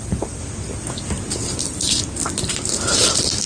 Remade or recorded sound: recorded